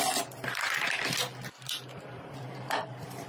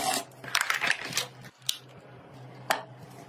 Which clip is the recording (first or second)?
second